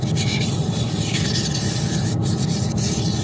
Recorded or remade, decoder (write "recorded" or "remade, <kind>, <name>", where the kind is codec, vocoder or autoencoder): recorded